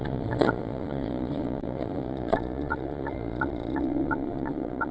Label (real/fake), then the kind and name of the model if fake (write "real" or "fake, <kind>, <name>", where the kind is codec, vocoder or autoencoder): fake, vocoder, Vocos